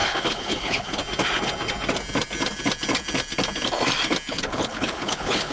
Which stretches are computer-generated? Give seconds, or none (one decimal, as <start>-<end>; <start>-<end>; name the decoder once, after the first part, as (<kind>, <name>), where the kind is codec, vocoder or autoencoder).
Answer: 0.0-1.0 (codec, HILCodec); 4.3-5.5